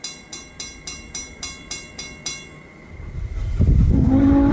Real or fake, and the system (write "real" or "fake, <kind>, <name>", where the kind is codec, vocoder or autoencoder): real